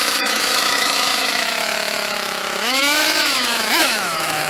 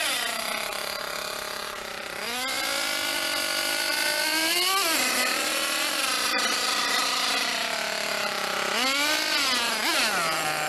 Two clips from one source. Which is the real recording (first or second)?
second